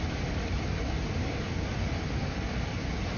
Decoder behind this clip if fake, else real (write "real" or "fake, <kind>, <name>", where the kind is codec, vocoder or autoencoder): real